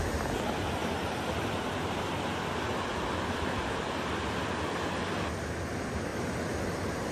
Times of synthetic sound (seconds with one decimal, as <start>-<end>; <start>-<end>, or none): none